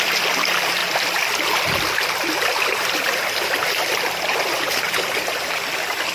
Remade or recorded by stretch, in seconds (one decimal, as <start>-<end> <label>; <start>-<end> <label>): 0.0-6.1 recorded